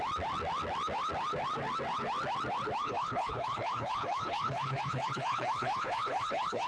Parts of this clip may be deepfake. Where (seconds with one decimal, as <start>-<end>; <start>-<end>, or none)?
2.8-6.7